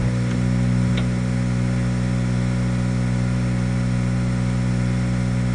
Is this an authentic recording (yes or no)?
yes